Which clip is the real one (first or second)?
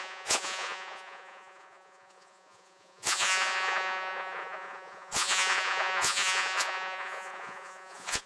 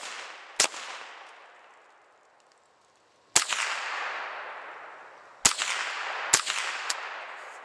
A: second